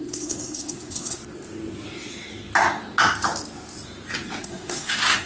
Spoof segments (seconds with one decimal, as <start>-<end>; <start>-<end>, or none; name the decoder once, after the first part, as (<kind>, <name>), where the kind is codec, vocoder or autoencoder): 0.0-1.2 (codec, SNAC); 4.4-5.3